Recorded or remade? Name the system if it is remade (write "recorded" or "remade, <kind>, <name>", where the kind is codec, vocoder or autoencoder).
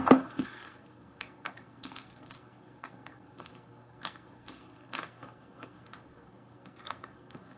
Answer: remade, codec, SNAC